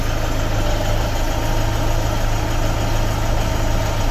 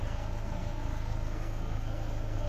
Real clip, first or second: first